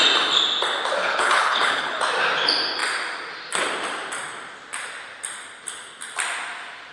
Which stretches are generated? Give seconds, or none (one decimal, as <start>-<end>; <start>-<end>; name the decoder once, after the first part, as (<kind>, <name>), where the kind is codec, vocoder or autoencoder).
1.0-2.0 (codec, HILCodec)